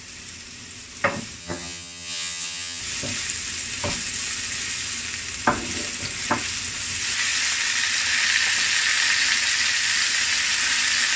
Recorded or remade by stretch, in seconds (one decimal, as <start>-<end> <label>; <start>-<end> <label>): 0.0-1.4 recorded; 1.4-2.8 remade; 2.8-11.2 recorded